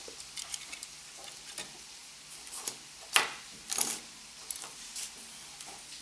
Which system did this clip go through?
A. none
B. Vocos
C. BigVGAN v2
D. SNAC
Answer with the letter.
A